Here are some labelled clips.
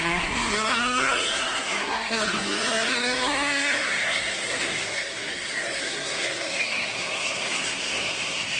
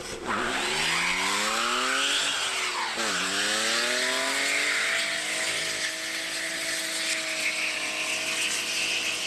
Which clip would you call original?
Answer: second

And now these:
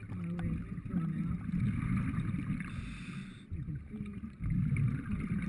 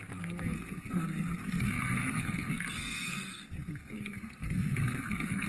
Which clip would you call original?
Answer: first